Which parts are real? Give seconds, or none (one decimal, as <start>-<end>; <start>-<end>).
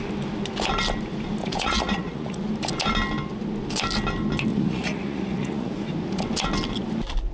0.0-1.4; 2.5-4.5; 5.7-7.3